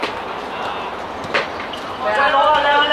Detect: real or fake real